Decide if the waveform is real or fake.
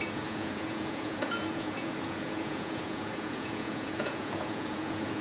fake